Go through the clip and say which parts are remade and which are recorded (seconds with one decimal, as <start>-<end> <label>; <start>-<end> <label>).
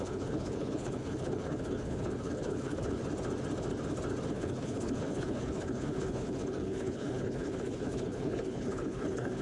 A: 0.0-3.0 remade; 3.0-4.3 recorded; 4.3-9.4 remade